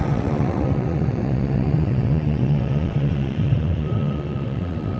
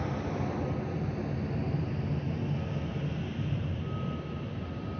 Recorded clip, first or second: second